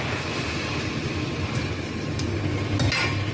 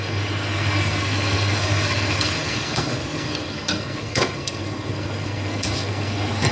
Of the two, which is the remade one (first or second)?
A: second